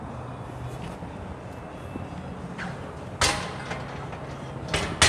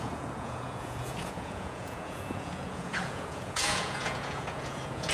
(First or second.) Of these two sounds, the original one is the first